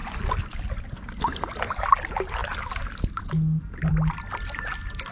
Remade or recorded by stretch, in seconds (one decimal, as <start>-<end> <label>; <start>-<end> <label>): 0.0-5.1 recorded